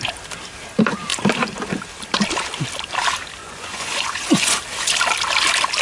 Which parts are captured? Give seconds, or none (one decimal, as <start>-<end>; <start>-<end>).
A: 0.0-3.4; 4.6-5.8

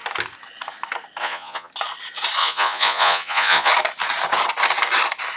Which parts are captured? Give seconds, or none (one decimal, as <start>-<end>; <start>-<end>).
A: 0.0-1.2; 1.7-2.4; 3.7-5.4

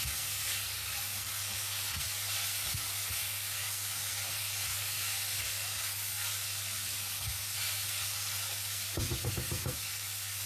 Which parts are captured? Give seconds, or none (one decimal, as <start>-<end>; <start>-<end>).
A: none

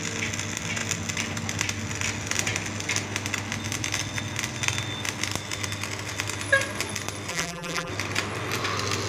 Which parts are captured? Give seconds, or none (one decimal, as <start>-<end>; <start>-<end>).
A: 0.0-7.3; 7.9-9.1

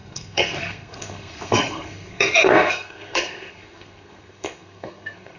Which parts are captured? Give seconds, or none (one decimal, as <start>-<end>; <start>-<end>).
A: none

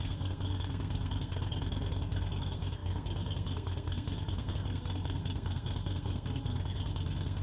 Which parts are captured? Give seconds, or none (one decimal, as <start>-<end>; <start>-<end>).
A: none